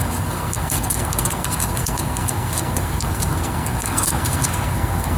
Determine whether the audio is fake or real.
fake